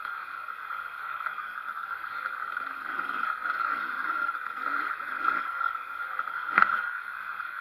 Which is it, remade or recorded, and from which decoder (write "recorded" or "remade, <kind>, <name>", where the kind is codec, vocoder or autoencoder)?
remade, codec, SNAC